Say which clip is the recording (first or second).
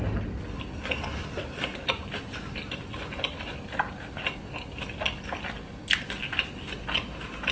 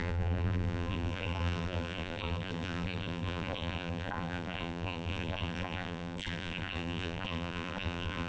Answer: first